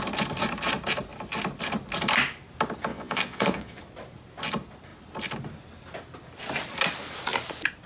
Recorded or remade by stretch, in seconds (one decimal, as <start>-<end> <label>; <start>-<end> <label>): 0.0-2.9 recorded; 2.9-3.8 remade; 3.8-7.9 recorded